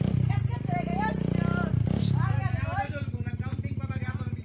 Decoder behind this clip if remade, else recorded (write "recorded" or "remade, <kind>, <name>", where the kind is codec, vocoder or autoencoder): recorded